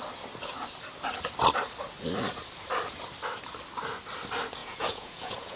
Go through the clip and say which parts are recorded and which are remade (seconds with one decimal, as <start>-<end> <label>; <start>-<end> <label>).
0.0-4.6 recorded; 4.6-5.6 remade